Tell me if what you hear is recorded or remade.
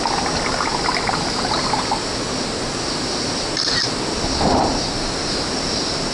recorded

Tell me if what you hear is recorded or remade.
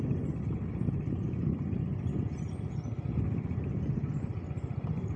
recorded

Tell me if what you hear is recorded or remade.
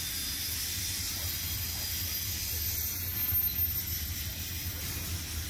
recorded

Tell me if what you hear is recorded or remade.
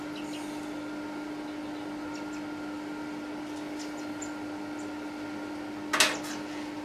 recorded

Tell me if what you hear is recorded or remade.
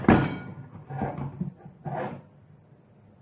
recorded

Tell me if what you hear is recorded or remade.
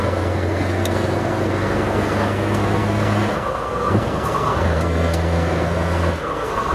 remade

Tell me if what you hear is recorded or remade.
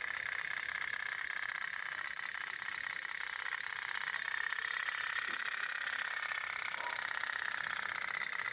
recorded